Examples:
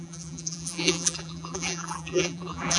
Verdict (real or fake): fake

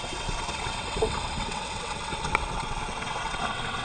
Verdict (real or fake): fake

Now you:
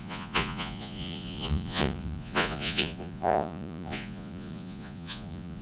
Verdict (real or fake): fake